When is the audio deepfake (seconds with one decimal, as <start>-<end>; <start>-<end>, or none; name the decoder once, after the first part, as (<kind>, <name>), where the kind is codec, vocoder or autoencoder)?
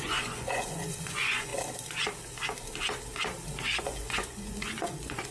0.0-1.5 (vocoder, Vocos); 3.8-5.3